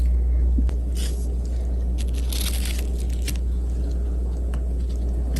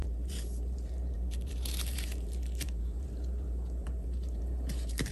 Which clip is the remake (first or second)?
second